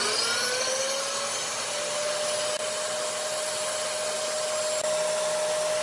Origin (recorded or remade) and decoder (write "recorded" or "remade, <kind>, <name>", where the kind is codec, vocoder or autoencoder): recorded